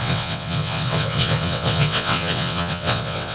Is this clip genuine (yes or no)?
no